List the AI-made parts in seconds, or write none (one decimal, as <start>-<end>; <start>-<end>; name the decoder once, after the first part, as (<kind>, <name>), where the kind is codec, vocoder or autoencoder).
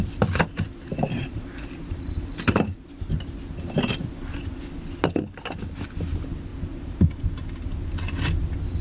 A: 0.9-3.2 (vocoder, BigVGAN v2); 6.5-7.2